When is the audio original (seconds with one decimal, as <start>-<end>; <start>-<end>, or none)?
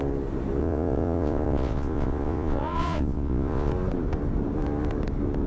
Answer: 0.0-0.6; 3.7-5.5